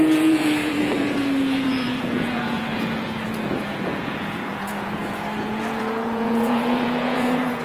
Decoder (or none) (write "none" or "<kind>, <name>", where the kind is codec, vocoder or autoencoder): vocoder, Vocos